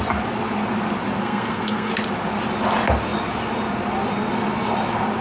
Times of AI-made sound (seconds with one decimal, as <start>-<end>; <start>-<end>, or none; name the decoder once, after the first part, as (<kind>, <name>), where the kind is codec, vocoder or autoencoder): 1.2-1.9 (codec, SNAC)